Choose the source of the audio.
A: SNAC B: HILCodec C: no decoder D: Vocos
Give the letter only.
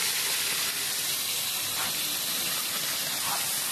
C